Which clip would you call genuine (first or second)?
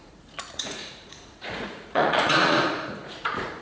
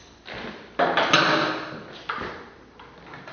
second